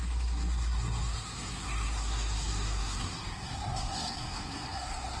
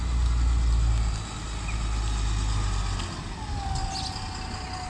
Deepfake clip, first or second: first